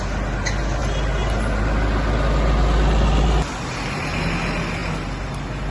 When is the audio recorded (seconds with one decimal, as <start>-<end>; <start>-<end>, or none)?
0.0-5.7